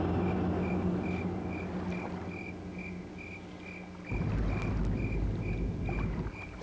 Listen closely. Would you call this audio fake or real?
real